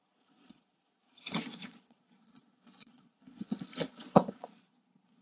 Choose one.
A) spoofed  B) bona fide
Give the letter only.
A